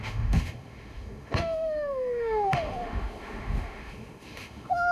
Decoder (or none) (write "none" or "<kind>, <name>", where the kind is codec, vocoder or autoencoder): autoencoder, DAC-VAE